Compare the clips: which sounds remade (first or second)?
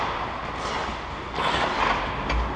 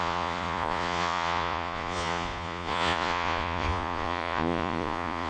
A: second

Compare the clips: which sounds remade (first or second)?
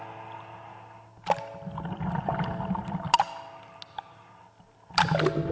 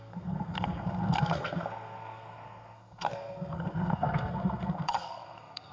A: second